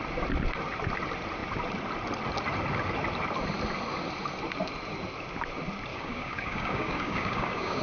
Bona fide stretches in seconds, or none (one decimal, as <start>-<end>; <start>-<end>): 0.0-5.9